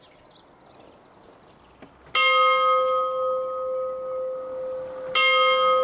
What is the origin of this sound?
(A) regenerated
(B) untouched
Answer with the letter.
B